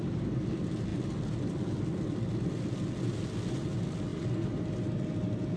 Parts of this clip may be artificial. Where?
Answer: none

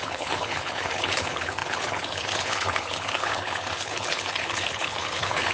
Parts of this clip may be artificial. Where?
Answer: 0.0-5.5 (codec, HILCodec)

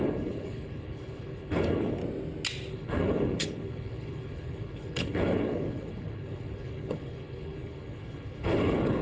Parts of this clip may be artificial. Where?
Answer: 0.0-2.0 (codec, HILCodec); 2.7-9.0

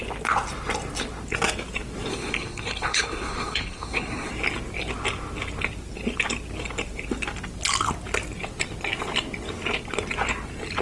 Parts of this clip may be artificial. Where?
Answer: 2.1-4.3 (codec, HILCodec)

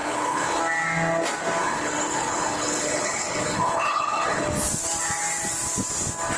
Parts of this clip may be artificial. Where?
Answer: 0.0-0.6 (codec, HILCodec); 1.6-4.4

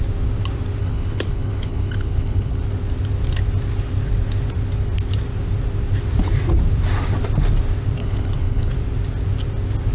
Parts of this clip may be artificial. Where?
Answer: 0.8-2.6 (codec, HILCodec); 8.0-8.7

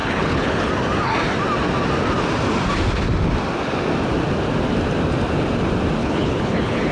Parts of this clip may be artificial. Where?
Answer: 0.0-0.7 (codec, HILCodec); 6.0-6.9

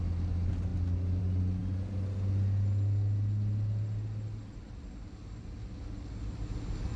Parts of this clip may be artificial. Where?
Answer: none